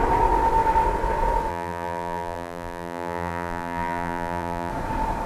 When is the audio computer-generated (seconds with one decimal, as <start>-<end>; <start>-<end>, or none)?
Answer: 1.5-4.7